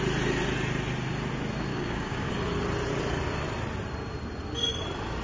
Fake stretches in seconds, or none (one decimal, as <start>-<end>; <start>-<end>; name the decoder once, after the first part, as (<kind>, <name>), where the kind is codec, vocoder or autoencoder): 1.7-2.3 (codec, DAC)